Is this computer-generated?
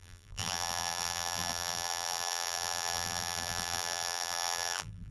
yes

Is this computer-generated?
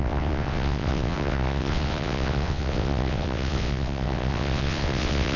yes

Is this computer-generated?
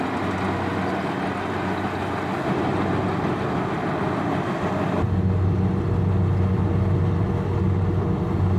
no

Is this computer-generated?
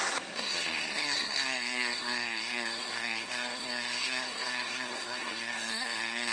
yes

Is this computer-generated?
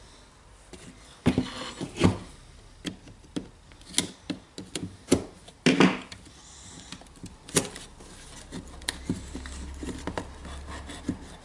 no